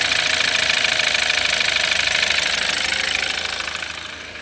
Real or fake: real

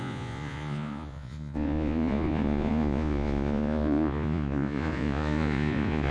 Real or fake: fake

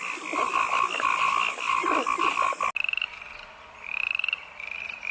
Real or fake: real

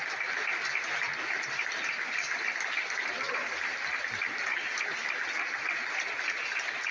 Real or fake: real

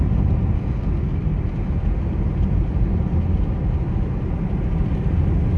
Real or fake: real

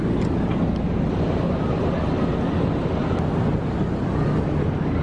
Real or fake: real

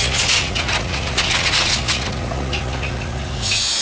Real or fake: fake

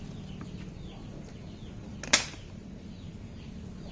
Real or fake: real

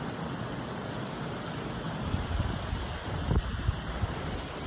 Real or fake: real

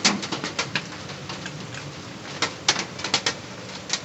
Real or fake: real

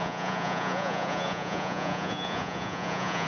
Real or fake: fake